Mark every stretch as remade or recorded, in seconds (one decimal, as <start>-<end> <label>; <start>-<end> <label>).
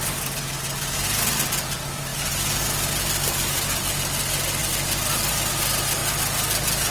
0.0-2.1 recorded; 2.1-4.0 remade; 4.0-6.9 recorded